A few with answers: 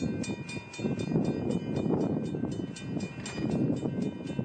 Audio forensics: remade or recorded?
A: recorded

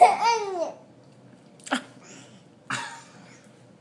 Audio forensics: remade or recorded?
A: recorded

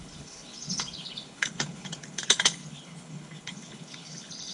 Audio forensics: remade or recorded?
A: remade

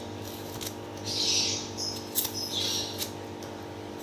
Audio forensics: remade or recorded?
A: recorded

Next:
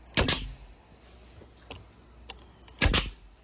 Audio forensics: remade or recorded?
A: recorded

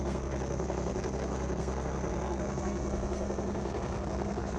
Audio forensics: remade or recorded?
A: remade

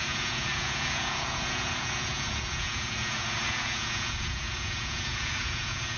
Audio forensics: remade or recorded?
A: remade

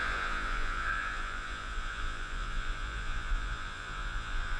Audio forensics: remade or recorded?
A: remade